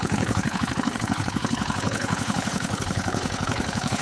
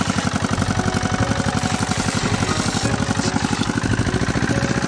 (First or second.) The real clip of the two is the second